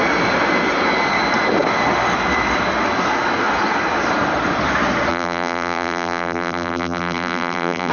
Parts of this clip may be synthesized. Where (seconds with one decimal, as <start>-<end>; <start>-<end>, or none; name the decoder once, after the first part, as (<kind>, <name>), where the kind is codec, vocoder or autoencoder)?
5.1-7.9 (vocoder, BigVGAN v2)